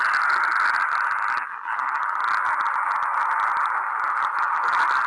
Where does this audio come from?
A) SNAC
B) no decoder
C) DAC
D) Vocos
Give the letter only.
B